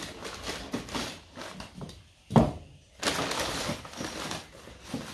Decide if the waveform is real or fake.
real